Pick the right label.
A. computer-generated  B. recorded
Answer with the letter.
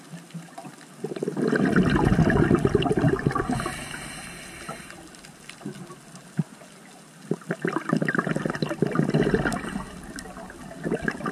B